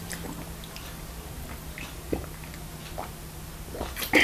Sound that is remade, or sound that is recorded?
recorded